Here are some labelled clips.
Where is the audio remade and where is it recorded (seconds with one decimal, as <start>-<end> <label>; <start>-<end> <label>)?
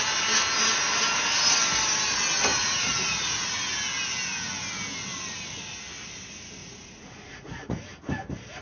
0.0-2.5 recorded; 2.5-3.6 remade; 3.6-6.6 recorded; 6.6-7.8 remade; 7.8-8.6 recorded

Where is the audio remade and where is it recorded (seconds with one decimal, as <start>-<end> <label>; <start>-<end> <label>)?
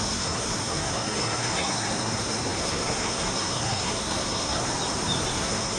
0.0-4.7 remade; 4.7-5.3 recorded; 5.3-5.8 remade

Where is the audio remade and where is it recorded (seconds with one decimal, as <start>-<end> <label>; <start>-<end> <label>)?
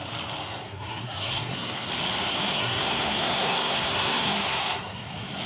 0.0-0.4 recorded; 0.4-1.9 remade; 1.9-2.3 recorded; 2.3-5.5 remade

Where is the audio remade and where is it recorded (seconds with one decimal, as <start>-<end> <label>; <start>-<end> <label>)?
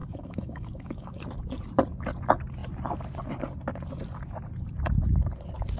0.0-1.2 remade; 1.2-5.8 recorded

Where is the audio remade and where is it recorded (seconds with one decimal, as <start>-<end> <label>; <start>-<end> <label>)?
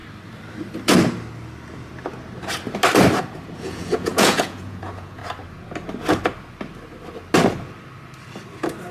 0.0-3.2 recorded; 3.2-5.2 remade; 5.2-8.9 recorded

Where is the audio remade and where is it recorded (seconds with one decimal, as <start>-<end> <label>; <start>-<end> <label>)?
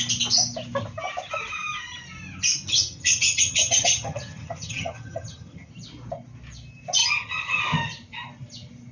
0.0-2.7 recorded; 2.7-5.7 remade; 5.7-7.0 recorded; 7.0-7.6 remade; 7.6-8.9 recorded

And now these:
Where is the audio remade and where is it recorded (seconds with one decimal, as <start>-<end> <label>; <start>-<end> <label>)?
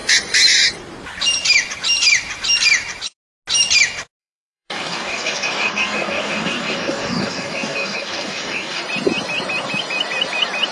0.0-4.2 recorded; 4.2-8.8 remade; 8.8-10.7 recorded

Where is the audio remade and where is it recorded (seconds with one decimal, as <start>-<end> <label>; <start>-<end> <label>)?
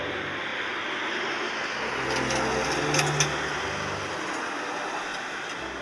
0.0-5.8 recorded